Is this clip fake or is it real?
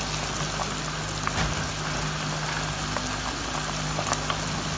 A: real